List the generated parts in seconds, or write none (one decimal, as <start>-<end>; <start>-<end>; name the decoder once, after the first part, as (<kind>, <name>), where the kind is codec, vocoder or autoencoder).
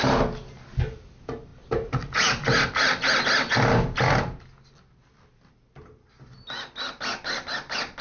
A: none